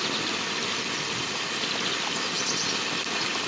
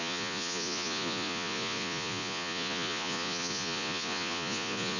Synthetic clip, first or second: second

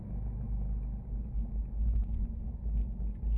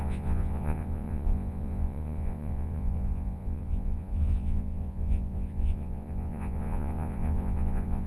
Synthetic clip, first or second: second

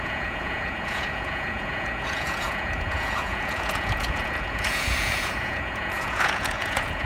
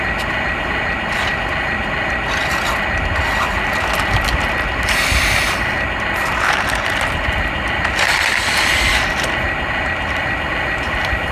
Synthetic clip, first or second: first